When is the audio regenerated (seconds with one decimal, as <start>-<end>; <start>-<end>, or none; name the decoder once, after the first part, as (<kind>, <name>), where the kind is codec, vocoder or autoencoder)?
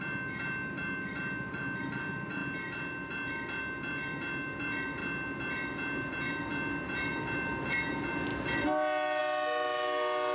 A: none